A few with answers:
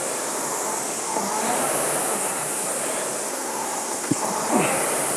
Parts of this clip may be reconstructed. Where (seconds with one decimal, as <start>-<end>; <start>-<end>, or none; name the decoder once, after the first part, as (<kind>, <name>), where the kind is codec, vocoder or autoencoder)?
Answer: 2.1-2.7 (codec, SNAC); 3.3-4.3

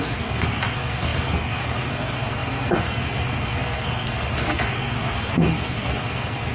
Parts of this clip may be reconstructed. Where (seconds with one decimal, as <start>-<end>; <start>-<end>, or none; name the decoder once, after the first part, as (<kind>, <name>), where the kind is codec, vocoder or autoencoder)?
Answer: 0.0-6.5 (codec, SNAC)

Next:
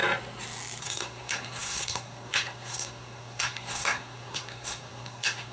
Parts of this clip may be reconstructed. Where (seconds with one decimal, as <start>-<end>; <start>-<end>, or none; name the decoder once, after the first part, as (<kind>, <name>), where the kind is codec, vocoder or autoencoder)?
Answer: 0.8-5.5 (codec, SNAC)